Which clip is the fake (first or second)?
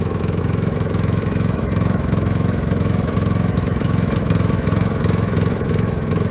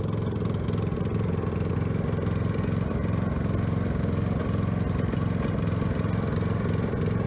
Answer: first